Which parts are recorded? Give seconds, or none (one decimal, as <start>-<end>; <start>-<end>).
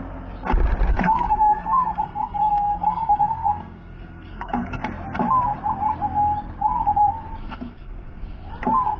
0.0-0.9; 4.8-7.4; 8.5-9.0